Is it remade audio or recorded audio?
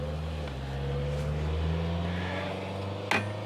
recorded